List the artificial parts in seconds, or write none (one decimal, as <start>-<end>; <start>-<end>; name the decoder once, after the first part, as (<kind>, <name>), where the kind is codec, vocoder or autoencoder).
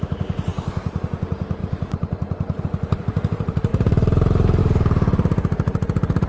0.5-1.0 (vocoder, BigVGAN v2); 1.6-2.6; 3.7-4.6